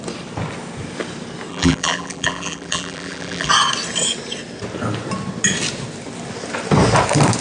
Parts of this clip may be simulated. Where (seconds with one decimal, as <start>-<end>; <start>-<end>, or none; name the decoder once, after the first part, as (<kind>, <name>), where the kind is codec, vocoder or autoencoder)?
1.5-3.5 (vocoder, BigVGAN v2)